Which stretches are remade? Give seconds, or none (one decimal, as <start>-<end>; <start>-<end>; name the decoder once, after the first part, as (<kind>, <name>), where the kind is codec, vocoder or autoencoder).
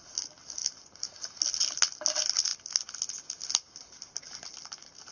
none